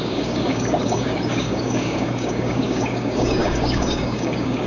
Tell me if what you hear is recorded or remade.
remade